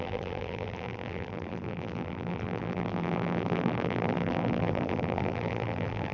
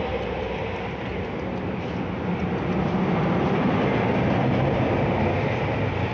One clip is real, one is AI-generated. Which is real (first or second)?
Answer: second